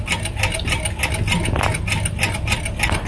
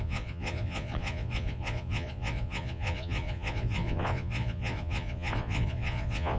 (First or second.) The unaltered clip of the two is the first